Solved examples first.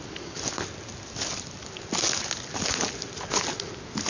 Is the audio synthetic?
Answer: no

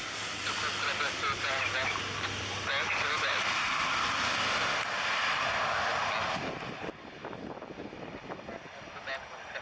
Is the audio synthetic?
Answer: no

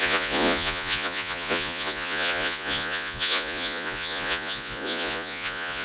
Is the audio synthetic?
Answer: yes